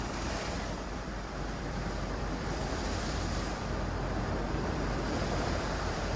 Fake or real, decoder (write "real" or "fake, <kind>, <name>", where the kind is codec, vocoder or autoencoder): fake, vocoder, BigVGAN v2